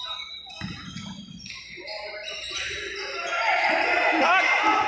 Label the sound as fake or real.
real